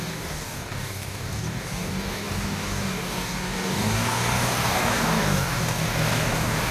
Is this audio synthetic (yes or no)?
yes